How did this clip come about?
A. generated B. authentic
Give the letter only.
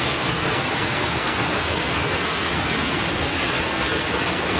A